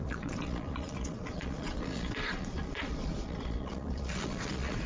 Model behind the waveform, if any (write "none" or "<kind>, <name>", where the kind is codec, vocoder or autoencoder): vocoder, Vocos